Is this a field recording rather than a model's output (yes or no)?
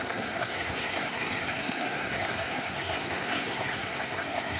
no